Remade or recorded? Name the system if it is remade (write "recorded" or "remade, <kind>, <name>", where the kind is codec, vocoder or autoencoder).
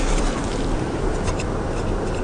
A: remade, vocoder, BigVGAN v2